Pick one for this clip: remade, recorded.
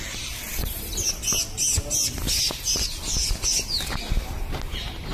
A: recorded